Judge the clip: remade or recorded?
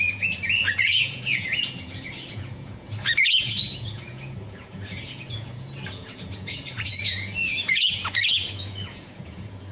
remade